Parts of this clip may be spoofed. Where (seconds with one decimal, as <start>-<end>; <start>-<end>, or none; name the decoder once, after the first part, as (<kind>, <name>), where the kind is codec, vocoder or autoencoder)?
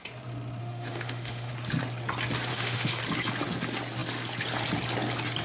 0.6-1.5 (autoencoder, DAC-VAE); 2.5-3.0